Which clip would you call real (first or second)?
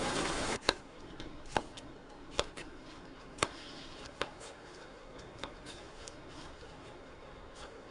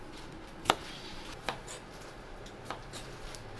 second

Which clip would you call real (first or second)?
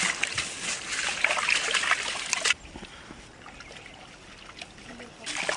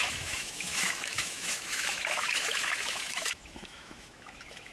first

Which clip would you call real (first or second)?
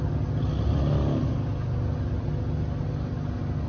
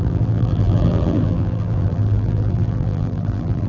first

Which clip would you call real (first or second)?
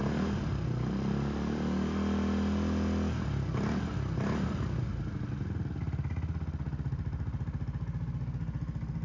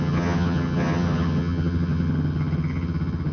first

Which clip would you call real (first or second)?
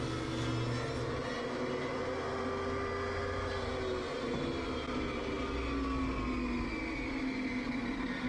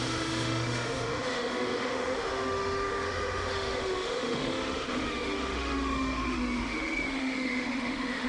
first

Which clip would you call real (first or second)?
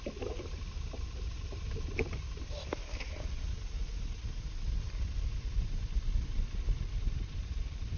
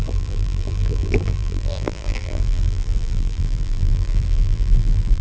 first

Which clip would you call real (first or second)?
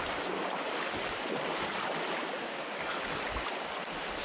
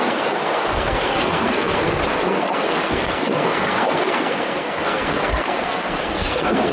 first